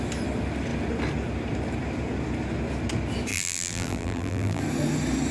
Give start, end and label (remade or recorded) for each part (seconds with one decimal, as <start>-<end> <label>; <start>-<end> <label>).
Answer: 0.0-3.3 recorded; 3.3-4.6 remade; 4.6-5.3 recorded